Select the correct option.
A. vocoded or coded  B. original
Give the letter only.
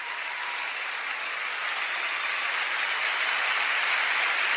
B